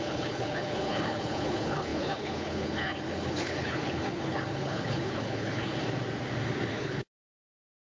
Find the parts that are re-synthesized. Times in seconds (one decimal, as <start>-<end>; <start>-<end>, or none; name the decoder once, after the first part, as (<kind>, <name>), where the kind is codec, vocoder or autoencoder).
0.0-5.8 (codec, HILCodec); 6.7-7.8